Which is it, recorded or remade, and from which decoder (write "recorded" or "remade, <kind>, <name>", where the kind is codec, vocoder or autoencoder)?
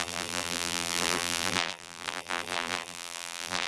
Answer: remade, vocoder, BigVGAN v2